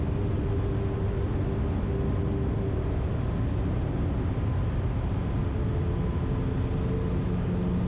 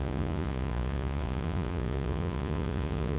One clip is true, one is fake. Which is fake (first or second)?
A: second